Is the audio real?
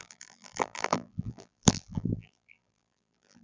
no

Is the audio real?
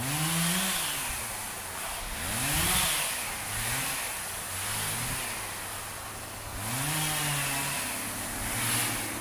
yes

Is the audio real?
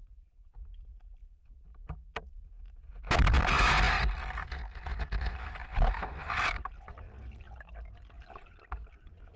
yes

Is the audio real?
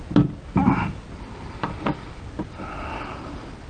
yes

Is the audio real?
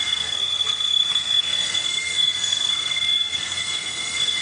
no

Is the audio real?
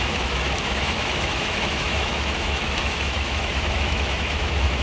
no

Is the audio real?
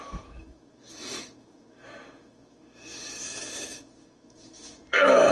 no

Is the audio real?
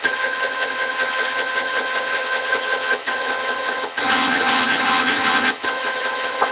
no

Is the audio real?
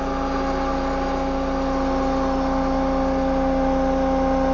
yes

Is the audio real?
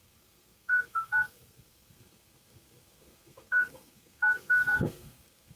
no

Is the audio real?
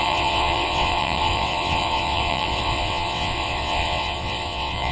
no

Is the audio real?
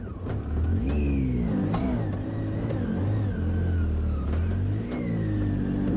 yes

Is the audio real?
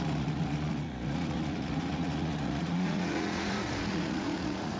no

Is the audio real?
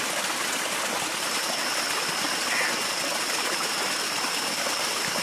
yes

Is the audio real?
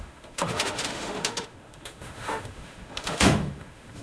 no